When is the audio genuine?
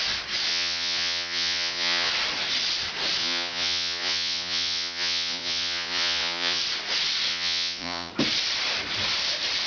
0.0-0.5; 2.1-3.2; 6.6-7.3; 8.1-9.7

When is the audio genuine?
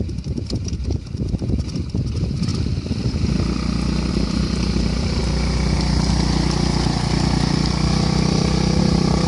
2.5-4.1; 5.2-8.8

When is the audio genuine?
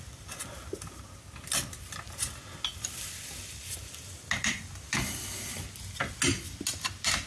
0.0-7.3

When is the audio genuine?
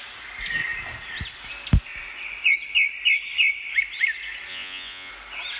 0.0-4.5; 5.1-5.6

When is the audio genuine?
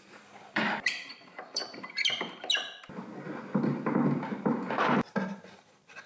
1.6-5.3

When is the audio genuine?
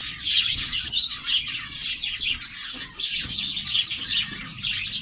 2.4-3.1; 4.0-5.0